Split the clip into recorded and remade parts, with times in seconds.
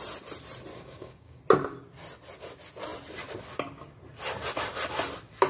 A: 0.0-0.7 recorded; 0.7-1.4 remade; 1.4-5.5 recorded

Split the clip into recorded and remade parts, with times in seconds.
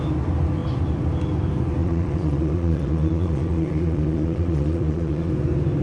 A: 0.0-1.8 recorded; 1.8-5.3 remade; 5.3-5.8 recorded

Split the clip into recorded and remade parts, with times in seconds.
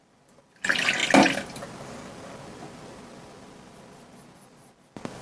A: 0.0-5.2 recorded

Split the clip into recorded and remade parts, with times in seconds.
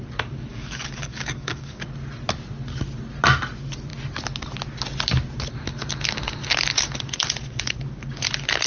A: 0.0-0.5 recorded; 0.5-1.8 remade; 1.8-8.7 recorded